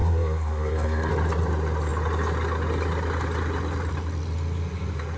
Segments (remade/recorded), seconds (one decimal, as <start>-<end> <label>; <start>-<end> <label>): 0.0-1.1 remade; 1.1-5.2 recorded